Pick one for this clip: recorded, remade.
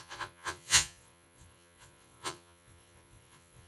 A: remade